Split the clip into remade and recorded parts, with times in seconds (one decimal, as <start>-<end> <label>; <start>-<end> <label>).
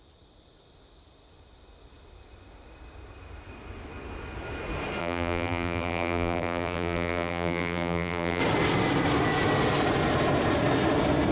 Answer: 0.0-5.0 recorded; 5.0-8.4 remade; 8.4-11.3 recorded